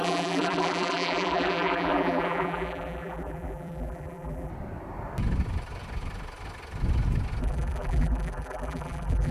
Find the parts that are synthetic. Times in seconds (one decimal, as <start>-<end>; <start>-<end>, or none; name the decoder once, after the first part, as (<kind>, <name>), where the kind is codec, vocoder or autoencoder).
0.0-4.5 (vocoder, BigVGAN v2); 7.4-9.3